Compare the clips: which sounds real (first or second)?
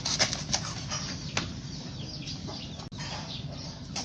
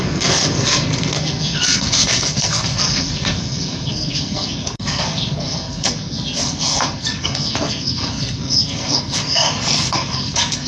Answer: first